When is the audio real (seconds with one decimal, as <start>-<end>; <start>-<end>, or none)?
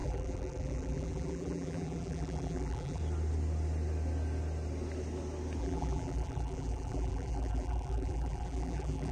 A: 3.0-5.6